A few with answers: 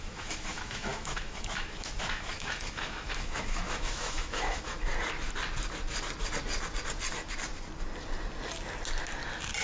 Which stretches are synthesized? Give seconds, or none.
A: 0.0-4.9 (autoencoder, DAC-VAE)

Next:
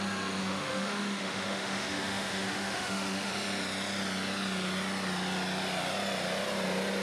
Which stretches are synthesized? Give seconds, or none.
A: 0.4-3.3 (autoencoder, DAC-VAE)

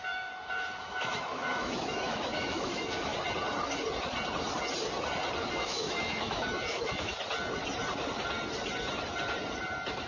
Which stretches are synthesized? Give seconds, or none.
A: 0.0-3.1 (autoencoder, DAC-VAE); 5.5-7.1

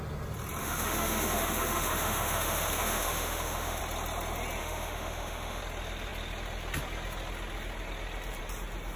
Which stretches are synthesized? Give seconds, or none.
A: 0.6-3.8 (autoencoder, DAC-VAE); 4.6-5.6

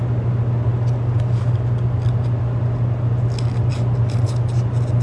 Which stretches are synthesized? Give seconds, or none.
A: none

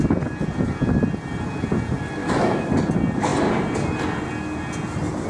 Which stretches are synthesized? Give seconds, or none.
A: 2.2-2.7 (autoencoder, DAC-VAE)

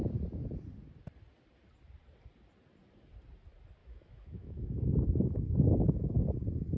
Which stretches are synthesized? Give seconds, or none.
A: 3.8-6.2 (autoencoder, DAC-VAE)